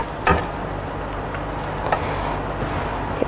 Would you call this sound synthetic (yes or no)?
no